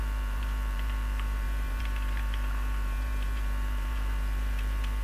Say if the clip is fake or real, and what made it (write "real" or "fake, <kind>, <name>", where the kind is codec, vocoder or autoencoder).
fake, vocoder, BigVGAN v2